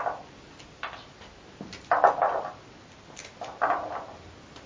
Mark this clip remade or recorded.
recorded